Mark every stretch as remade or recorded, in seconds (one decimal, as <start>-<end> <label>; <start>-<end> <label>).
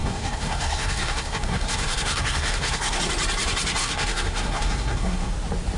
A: 0.0-3.0 remade; 3.0-3.8 recorded; 3.8-5.3 remade; 5.3-5.8 recorded